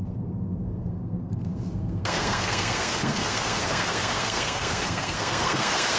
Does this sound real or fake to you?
fake